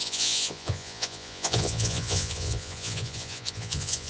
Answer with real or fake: fake